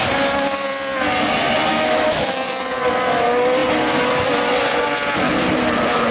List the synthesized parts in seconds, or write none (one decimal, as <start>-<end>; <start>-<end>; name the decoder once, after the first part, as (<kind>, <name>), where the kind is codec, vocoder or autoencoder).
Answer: 1.7-2.6 (autoencoder, DAC-VAE)